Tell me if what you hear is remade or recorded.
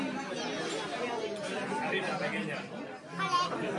recorded